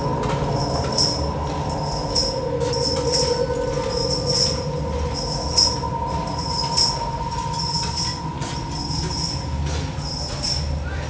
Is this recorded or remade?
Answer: recorded